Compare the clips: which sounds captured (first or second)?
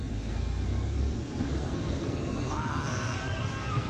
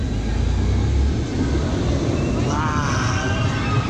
second